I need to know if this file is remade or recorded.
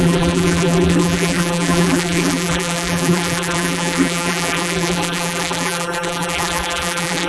remade